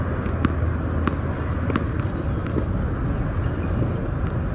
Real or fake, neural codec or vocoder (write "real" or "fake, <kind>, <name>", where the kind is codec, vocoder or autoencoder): real